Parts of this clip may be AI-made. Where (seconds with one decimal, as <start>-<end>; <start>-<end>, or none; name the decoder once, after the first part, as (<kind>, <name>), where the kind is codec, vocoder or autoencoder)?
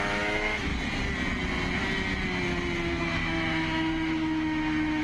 0.0-0.7 (autoencoder, DAC-VAE); 3.0-5.0